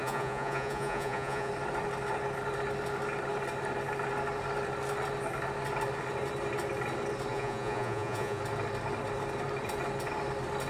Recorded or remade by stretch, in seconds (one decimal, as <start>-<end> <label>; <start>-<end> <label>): 0.0-1.5 remade; 1.5-7.3 recorded; 7.3-8.4 remade; 8.4-10.7 recorded